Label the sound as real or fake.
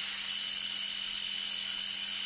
real